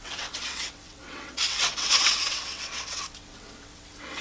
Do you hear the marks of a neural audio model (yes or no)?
yes